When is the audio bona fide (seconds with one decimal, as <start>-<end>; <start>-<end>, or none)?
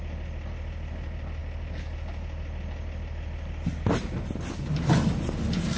0.0-5.8